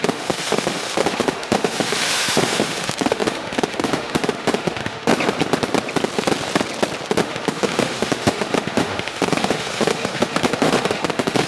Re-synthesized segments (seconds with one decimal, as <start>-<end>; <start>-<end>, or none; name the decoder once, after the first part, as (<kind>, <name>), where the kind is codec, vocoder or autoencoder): 0.0-5.1 (autoencoder, DAC-VAE); 7.2-11.5